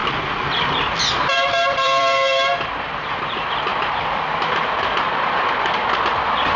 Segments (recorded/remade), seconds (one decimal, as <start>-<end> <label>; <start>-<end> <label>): 0.0-1.3 recorded; 1.3-3.2 remade; 3.2-6.6 recorded